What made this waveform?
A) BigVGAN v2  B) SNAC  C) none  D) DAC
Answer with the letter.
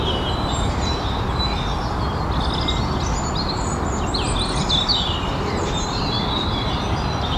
C